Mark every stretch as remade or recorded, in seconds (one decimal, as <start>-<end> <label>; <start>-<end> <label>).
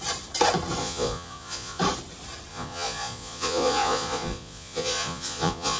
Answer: 0.0-0.8 recorded; 0.8-1.8 remade; 1.8-2.5 recorded; 2.5-5.8 remade